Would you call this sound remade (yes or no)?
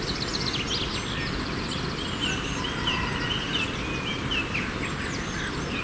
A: no